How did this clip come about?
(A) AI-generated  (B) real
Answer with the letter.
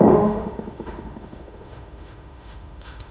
A